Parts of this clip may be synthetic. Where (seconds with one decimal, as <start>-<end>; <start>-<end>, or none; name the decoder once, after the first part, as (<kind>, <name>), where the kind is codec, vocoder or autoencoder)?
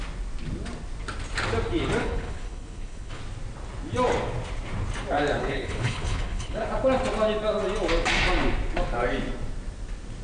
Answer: 2.0-3.2 (codec, HILCodec); 5.4-6.7